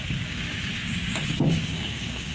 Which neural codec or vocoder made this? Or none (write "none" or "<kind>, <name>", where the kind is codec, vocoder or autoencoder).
codec, DAC